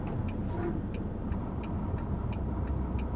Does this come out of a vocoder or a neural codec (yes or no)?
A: no